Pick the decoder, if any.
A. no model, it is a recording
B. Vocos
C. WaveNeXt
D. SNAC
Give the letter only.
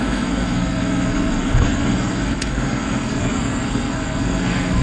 D